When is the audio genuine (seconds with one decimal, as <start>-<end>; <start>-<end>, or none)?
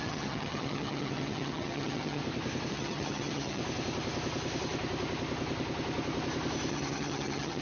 2.2-2.7; 3.6-6.7